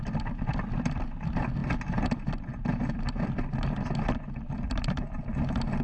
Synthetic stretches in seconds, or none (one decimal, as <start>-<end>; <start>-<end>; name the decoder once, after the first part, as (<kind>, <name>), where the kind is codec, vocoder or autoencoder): none